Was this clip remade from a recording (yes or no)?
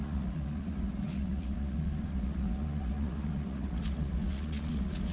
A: yes